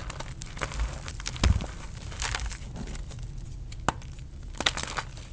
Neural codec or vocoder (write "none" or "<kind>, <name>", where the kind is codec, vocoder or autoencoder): none